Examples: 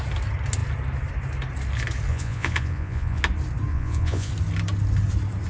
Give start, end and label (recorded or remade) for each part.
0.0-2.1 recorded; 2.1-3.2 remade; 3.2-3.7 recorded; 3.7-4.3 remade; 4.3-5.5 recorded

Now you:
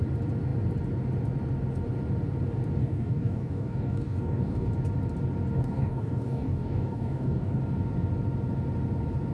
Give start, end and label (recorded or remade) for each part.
0.0-2.8 recorded; 2.8-4.7 remade; 4.7-5.5 recorded; 5.5-7.6 remade; 7.6-9.3 recorded

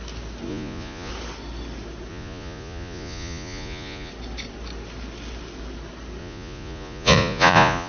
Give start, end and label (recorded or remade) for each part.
0.0-0.5 recorded; 0.5-1.1 remade; 1.1-2.1 recorded; 2.1-4.1 remade; 4.1-6.2 recorded; 6.2-7.9 remade